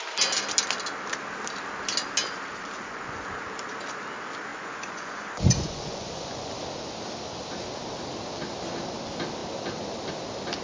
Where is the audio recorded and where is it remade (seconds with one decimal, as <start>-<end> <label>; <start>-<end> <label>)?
0.0-2.6 recorded; 2.6-3.2 remade; 3.2-4.5 recorded; 4.5-6.5 remade; 6.5-10.6 recorded